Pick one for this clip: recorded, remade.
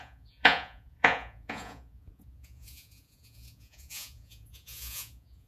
remade